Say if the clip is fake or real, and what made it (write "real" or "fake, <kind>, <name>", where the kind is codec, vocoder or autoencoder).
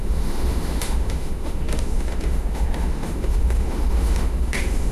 fake, autoencoder, DAC-VAE